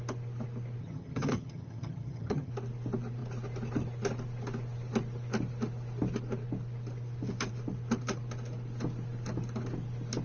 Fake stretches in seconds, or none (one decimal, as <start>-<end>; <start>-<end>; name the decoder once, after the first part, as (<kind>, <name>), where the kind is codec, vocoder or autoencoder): 0.8-2.5 (vocoder, HiFi-GAN)